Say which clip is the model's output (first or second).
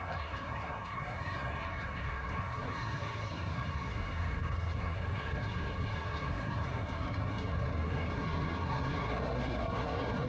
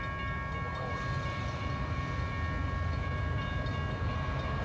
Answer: first